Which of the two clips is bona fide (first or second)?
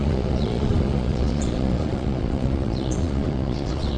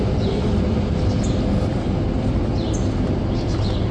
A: second